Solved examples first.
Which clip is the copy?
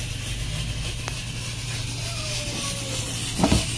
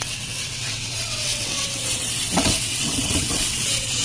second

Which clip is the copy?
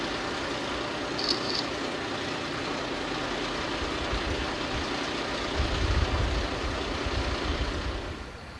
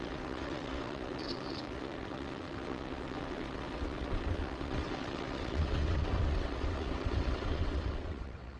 second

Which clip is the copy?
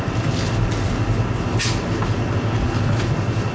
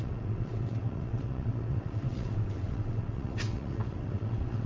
second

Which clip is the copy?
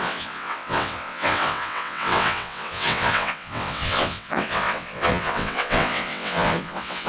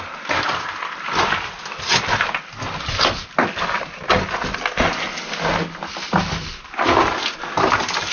first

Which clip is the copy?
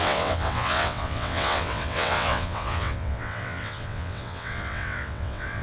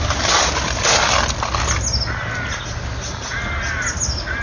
first